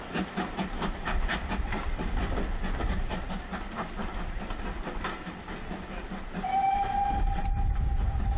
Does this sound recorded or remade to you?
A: recorded